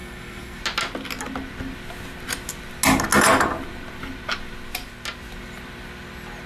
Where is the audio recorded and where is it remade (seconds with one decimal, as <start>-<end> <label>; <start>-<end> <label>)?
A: 0.0-0.6 remade; 0.6-6.5 recorded